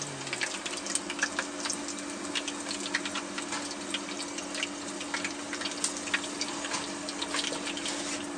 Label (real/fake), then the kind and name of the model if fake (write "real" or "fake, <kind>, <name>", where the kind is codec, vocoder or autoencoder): real